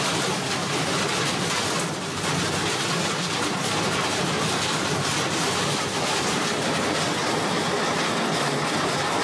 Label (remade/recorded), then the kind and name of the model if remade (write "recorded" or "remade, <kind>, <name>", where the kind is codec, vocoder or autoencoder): recorded